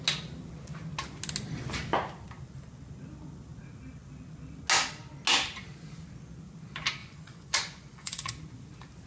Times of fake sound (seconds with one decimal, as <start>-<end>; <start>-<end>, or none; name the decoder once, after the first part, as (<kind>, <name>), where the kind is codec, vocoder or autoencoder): 7.0-8.3 (vocoder, Vocos)